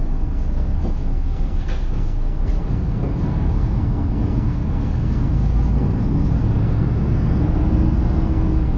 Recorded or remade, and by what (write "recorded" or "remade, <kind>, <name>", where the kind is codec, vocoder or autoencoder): remade, codec, SNAC